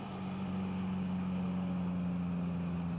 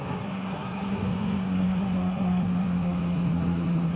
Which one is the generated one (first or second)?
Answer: second